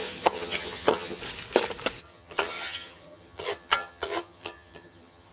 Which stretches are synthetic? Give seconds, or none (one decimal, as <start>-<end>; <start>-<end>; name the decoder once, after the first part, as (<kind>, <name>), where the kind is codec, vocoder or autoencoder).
0.0-1.2 (vocoder, HiFi-GAN); 2.0-5.3